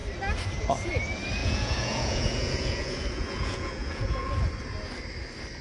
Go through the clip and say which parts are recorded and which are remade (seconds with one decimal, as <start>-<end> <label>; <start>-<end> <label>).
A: 0.0-1.4 recorded; 1.4-4.3 remade; 4.3-5.6 recorded